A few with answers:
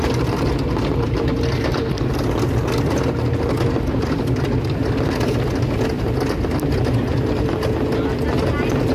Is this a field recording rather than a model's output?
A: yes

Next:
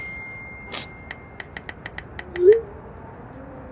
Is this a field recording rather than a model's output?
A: yes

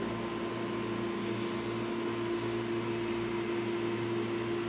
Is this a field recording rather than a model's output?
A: yes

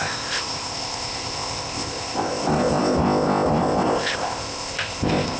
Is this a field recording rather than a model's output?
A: no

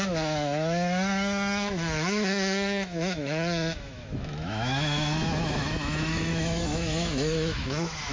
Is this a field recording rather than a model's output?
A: no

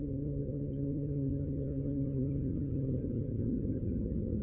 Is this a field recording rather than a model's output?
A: no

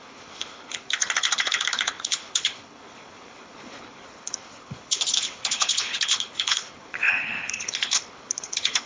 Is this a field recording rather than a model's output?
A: no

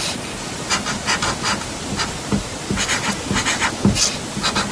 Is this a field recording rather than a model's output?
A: yes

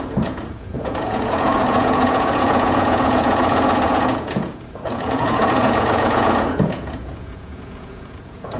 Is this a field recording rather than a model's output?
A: no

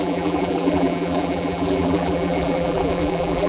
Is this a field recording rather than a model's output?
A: no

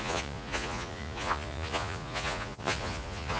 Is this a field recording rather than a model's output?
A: no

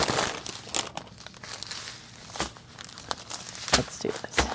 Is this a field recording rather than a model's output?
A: yes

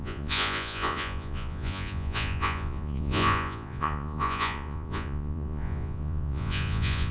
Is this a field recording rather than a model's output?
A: no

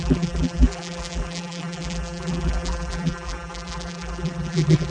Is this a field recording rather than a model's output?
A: no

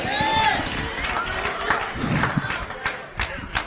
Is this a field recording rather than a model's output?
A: yes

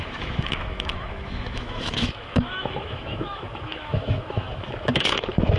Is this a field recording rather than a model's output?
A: no